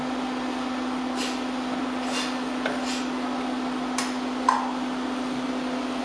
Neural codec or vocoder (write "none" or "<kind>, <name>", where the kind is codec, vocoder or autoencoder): none